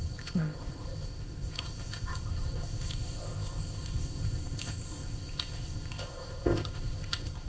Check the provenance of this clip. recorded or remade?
remade